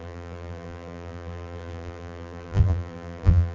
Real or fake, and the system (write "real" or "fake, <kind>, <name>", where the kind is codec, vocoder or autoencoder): fake, vocoder, BigVGAN v2